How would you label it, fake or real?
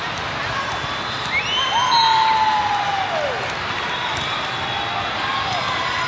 real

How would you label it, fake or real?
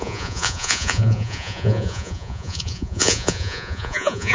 fake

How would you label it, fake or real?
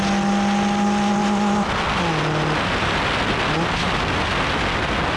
real